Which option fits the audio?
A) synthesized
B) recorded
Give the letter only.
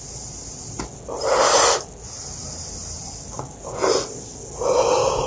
B